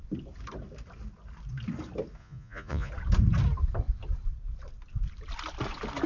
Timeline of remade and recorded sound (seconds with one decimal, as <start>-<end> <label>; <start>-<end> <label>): 0.0-2.2 recorded; 2.2-2.9 remade; 2.9-6.1 recorded